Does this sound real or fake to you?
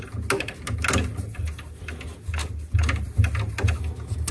real